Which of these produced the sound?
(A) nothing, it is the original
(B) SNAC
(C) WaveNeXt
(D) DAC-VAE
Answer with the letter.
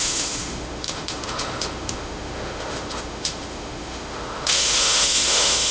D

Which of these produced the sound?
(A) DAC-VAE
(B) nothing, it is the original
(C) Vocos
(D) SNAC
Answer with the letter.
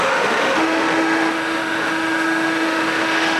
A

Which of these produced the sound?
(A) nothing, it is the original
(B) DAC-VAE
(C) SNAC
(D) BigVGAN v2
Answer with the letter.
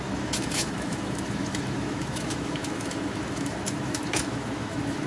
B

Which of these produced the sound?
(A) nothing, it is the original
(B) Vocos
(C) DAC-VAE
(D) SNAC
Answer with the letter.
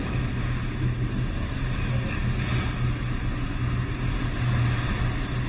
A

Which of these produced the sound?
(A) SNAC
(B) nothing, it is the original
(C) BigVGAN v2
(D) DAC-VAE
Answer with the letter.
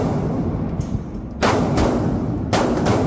B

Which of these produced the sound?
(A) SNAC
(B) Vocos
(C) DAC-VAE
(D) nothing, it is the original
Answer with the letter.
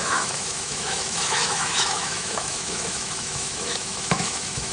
C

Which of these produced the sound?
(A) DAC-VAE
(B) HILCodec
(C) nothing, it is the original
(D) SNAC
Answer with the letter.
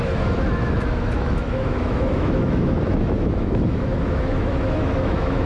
A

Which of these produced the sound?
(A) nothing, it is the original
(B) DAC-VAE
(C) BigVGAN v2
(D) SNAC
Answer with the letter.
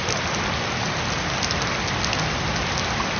A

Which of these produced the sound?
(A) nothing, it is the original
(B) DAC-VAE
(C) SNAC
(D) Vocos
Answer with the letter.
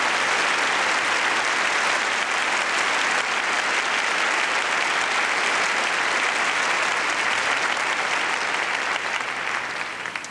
A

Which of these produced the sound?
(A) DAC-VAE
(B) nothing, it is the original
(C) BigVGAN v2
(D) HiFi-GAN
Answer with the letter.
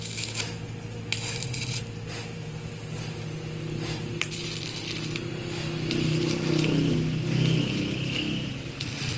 B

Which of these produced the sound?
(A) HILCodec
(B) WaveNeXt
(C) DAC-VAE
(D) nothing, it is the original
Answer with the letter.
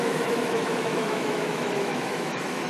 C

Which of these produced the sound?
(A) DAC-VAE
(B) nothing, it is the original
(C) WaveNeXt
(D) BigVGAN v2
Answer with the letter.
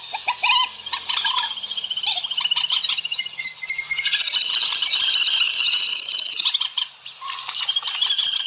B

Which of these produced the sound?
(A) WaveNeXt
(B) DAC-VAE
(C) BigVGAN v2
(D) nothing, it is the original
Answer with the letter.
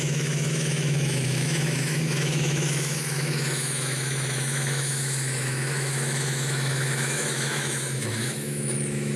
B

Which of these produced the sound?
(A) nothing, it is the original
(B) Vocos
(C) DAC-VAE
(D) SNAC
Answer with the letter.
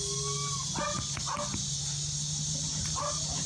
A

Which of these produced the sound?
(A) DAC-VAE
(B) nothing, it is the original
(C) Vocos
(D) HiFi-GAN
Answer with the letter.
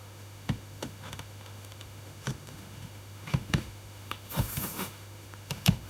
A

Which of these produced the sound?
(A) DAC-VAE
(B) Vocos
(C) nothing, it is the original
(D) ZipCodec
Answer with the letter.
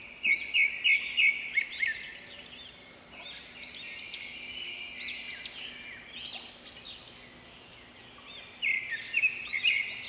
C